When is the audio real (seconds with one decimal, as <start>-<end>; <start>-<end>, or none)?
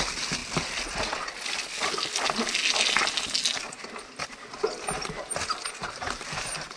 0.0-5.8